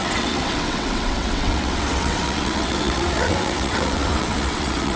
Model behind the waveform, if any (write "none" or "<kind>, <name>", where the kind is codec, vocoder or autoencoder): vocoder, WaveNeXt